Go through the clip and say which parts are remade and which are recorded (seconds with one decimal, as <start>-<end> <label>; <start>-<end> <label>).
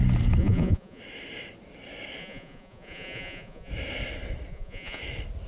0.0-0.4 recorded; 0.4-1.0 remade; 1.0-2.2 recorded; 2.2-3.7 remade; 3.7-4.5 recorded; 4.5-5.0 remade; 5.0-5.5 recorded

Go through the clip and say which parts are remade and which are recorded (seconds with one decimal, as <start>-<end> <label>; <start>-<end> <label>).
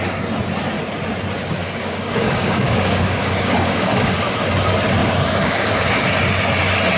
0.0-1.6 recorded; 1.6-4.3 remade; 4.3-5.0 recorded; 5.0-6.1 remade; 6.1-7.0 recorded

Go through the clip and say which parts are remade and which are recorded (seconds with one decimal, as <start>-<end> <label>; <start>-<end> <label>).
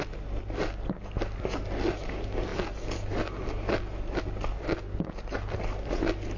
0.0-6.4 recorded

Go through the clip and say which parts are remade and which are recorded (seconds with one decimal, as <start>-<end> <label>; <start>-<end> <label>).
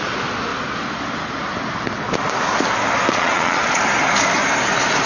0.0-3.1 recorded; 3.1-3.8 remade; 3.8-5.1 recorded